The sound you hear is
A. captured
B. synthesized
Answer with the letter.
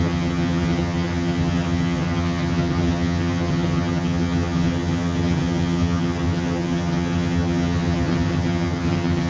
B